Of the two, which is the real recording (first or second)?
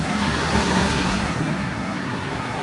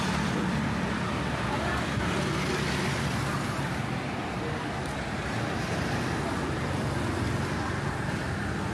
second